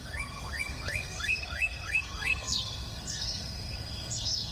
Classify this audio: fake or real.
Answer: fake